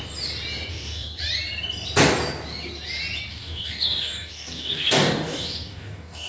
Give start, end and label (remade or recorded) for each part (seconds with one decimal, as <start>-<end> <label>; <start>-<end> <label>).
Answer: 0.0-0.7 recorded; 0.7-1.2 remade; 1.2-3.3 recorded; 3.3-6.3 remade